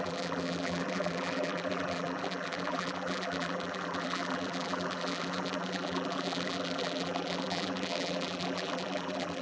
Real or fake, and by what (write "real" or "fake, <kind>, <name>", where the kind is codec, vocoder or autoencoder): fake, vocoder, BigVGAN v2